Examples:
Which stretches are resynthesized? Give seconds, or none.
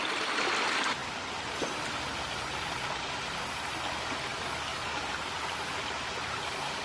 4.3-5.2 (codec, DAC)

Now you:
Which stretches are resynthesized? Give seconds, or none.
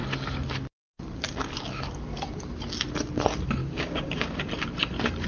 3.6-4.4 (codec, DAC)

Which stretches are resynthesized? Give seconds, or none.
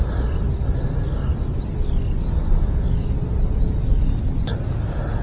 none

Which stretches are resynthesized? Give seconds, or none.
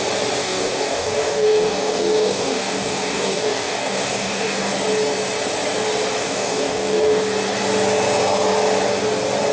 0.4-4.7 (codec, DAC); 6.2-7.2